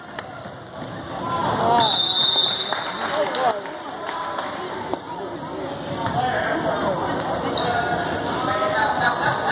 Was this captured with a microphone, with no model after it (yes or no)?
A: yes